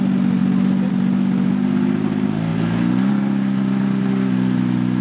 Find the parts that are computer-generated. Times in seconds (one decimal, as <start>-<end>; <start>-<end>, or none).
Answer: none